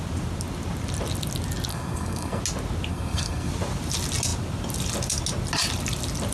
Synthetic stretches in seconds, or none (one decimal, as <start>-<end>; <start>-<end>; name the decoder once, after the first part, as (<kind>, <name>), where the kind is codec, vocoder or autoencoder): 1.7-2.4 (codec, SNAC); 2.9-3.5